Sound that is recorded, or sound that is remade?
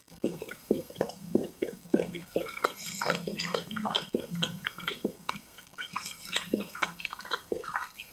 remade